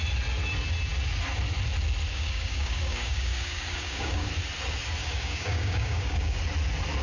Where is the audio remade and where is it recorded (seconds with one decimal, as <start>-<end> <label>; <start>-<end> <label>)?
0.0-2.1 recorded; 2.1-4.3 remade; 4.3-5.0 recorded; 5.0-6.4 remade; 6.4-7.0 recorded